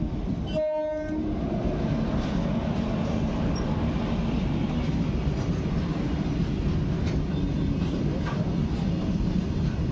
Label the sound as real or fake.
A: real